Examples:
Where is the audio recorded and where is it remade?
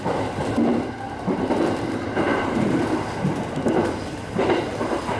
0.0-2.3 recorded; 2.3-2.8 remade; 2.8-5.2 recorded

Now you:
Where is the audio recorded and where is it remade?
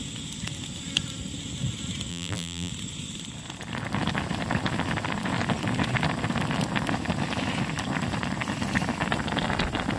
0.0-2.1 recorded; 2.1-2.7 remade; 2.7-10.0 recorded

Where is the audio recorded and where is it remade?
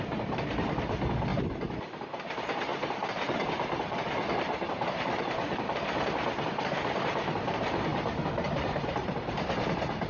0.0-1.3 remade; 1.3-2.2 recorded; 2.2-10.1 remade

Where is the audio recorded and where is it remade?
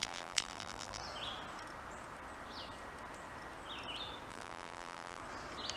0.0-1.0 remade; 1.0-4.3 recorded; 4.3-5.2 remade; 5.2-5.8 recorded